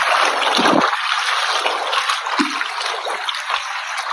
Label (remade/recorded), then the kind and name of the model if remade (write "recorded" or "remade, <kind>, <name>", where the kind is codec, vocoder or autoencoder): recorded